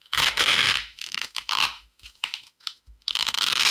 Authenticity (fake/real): fake